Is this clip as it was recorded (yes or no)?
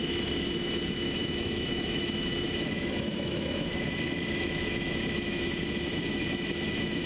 no